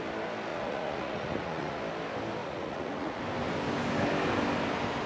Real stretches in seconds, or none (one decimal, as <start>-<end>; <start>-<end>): 0.0-0.5; 1.8-2.4; 3.2-5.1